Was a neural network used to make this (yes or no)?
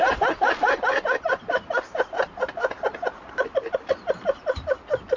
yes